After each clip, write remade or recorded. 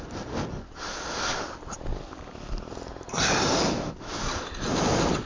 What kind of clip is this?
recorded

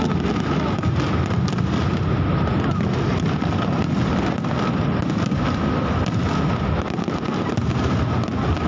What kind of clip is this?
recorded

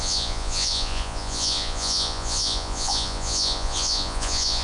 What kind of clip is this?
remade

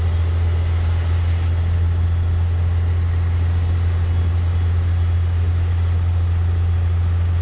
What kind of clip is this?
recorded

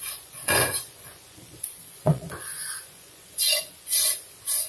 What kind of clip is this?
remade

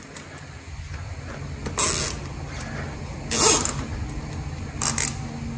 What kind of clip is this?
recorded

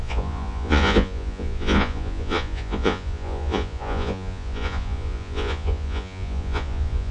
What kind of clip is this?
remade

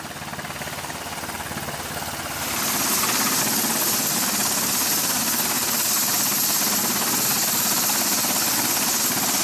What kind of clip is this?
recorded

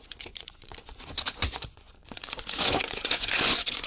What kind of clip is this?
remade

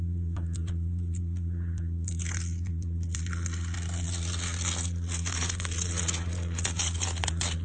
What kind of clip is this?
remade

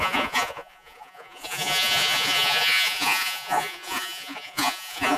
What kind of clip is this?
remade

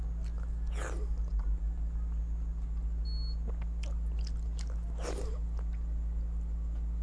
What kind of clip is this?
recorded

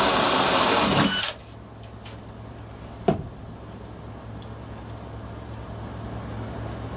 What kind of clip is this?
recorded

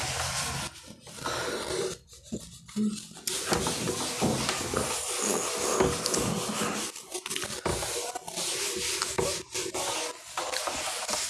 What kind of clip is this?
recorded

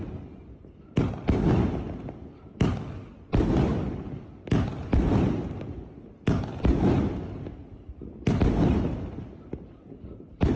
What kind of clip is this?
recorded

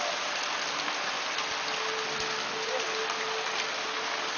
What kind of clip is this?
recorded